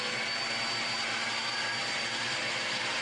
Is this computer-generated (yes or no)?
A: no